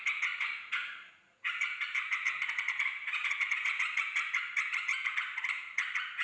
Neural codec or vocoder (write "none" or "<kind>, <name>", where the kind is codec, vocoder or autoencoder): vocoder, Vocos